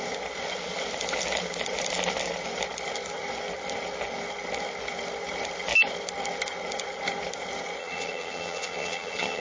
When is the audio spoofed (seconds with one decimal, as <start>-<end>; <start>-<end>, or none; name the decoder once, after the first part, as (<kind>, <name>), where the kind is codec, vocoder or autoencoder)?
7.8-9.4 (vocoder, HiFi-GAN)